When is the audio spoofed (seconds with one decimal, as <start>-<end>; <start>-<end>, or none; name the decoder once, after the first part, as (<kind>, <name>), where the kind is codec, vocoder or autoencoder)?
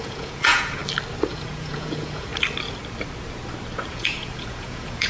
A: 0.0-0.8 (vocoder, Vocos); 1.3-2.3; 3.9-5.1